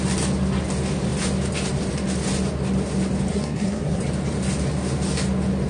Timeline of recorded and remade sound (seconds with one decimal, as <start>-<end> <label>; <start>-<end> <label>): 0.0-3.3 recorded; 3.3-4.0 remade; 4.0-5.7 recorded